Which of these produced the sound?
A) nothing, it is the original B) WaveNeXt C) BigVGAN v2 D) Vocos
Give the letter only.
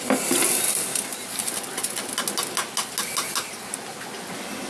A